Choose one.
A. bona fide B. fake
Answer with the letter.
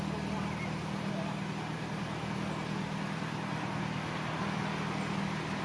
A